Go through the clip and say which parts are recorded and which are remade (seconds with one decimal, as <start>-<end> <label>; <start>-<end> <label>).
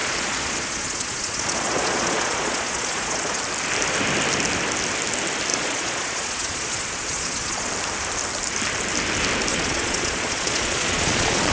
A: 0.0-3.4 remade; 3.4-5.5 recorded; 5.5-7.7 remade; 7.7-9.5 recorded; 9.5-11.5 remade